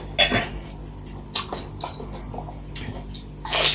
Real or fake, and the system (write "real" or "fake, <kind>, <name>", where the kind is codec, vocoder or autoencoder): real